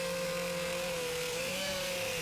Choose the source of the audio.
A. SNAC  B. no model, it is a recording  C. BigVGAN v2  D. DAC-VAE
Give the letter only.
A